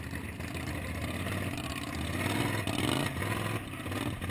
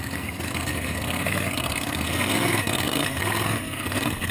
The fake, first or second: second